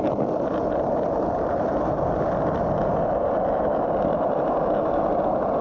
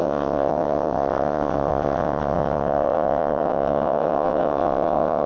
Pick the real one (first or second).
first